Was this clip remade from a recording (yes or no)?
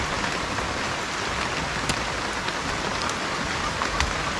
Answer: no